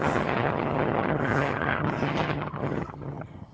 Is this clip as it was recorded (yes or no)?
no